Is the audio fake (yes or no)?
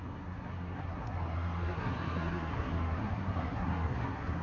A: yes